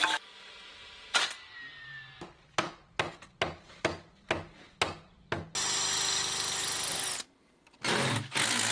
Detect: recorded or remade recorded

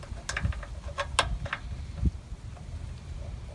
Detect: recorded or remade recorded